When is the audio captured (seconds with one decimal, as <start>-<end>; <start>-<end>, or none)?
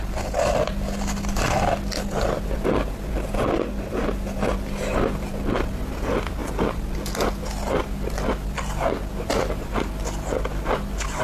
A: 0.0-11.2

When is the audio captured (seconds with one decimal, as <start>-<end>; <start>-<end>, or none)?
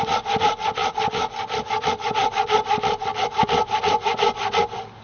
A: 0.0-5.0